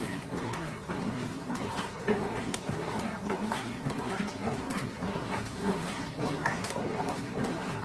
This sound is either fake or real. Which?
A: fake